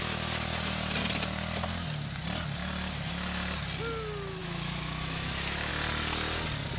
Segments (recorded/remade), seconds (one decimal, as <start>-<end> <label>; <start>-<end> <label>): 0.0-4.4 recorded; 4.4-5.7 remade; 5.7-6.8 recorded